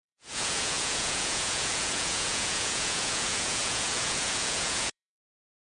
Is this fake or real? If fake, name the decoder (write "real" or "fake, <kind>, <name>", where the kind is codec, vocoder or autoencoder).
fake, vocoder, Vocos